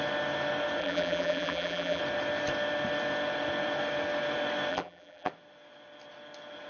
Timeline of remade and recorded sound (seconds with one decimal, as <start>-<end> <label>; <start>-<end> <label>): 0.0-0.8 recorded; 0.8-2.0 remade; 2.0-4.7 recorded; 4.7-5.3 remade; 5.3-6.7 recorded